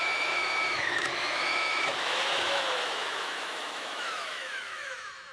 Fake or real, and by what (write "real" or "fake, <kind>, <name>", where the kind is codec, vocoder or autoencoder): fake, autoencoder, DAC-VAE